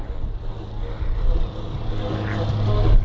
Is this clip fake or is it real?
real